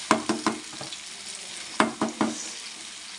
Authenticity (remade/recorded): recorded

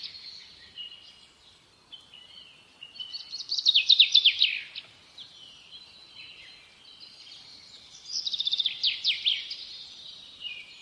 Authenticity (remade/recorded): recorded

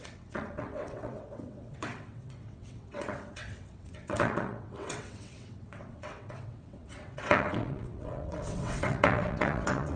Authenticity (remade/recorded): remade